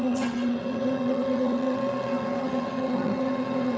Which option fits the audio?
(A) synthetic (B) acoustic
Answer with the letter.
A